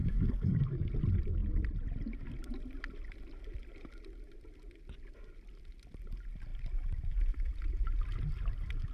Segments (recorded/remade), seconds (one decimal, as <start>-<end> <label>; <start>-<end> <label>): 0.0-0.9 remade; 0.9-8.9 recorded